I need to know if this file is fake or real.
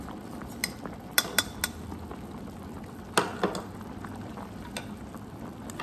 real